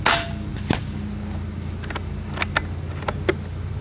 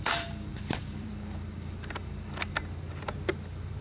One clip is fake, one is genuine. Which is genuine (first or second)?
first